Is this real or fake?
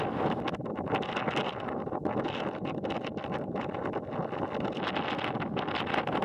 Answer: real